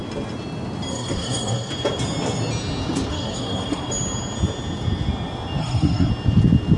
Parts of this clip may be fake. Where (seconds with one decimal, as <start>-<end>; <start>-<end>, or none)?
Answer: 0.9-1.7; 3.1-3.9; 5.6-6.1